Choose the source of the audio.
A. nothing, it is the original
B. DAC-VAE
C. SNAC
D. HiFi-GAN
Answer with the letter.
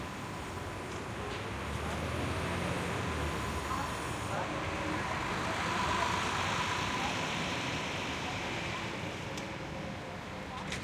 A